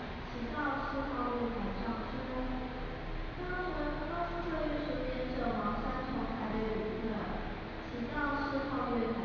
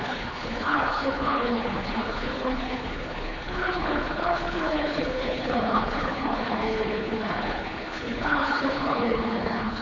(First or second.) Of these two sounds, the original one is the first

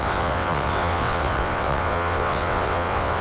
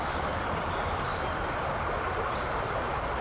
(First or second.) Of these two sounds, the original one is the second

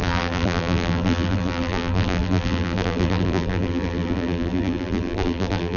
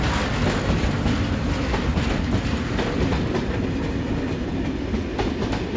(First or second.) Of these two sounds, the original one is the second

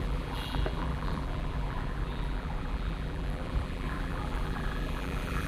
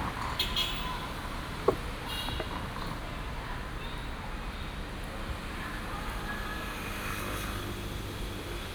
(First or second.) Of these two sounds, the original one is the second